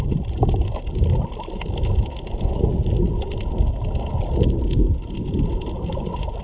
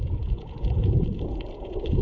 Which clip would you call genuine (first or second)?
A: first